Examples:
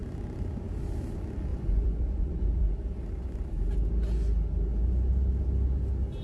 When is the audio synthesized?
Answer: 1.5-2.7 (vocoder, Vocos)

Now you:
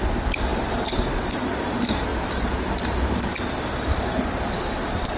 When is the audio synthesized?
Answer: none

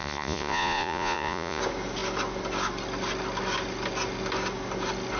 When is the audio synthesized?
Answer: 0.0-1.6 (vocoder, Vocos)

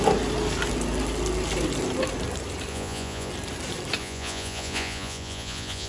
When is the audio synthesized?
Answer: 2.7-3.3 (vocoder, Vocos); 4.0-5.9